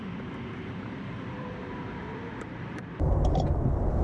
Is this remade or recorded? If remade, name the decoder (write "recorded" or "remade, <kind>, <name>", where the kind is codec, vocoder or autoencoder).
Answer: remade, vocoder, BigVGAN v2